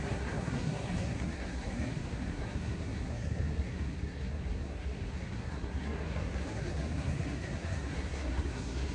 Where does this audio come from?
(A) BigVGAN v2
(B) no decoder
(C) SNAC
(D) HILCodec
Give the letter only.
C